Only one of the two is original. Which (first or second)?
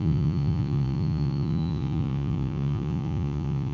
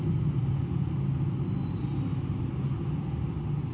second